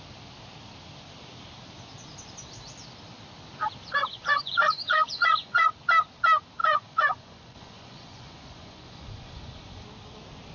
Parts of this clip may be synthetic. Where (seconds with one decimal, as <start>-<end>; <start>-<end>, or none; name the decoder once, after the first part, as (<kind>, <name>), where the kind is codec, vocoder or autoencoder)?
4.0-5.7 (vocoder, Vocos); 6.6-9.8